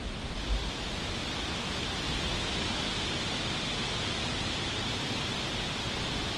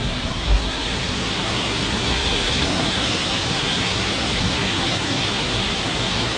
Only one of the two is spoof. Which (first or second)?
second